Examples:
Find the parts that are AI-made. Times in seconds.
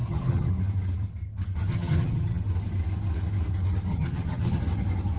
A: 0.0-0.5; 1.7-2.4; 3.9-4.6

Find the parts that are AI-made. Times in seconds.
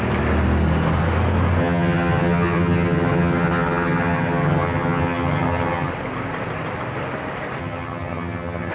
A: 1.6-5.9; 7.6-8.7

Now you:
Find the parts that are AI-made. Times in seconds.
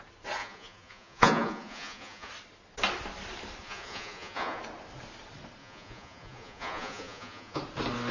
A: 0.4-2.3; 3.6-4.6; 5.6-7.6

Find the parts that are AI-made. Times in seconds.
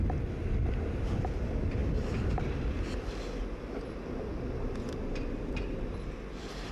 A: none